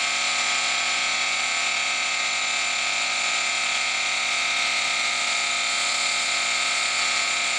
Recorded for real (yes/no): no